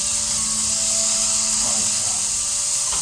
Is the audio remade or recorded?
recorded